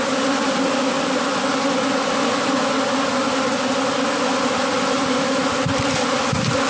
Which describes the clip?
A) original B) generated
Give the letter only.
A